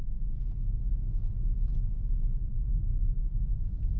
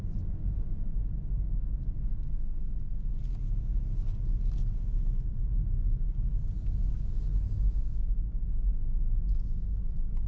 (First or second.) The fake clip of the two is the first